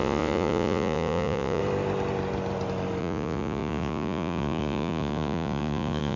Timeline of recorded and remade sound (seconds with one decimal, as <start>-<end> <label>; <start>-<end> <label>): 0.0-1.6 remade; 1.6-3.0 recorded; 3.0-6.2 remade